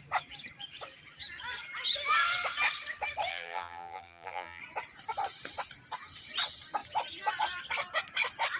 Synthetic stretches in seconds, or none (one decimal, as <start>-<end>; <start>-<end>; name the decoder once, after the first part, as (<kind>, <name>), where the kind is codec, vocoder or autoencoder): 3.3-4.6 (vocoder, BigVGAN v2)